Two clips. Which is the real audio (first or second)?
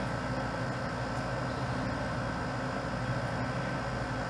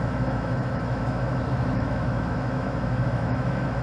first